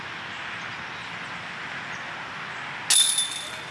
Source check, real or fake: real